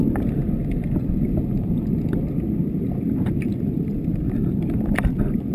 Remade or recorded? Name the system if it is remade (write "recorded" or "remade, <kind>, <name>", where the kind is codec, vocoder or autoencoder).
recorded